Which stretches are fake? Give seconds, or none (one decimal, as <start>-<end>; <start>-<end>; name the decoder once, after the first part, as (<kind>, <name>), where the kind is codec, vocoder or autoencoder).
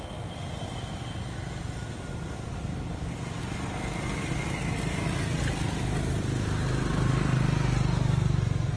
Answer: none